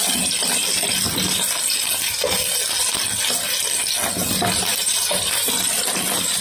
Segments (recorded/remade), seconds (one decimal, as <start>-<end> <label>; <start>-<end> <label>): 0.0-4.7 recorded; 4.7-5.7 remade; 5.7-6.4 recorded